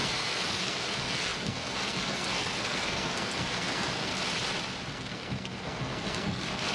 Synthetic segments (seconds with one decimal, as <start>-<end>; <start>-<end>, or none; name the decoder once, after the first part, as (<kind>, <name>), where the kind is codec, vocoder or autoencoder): 0.0-4.1 (codec, SNAC); 4.9-6.7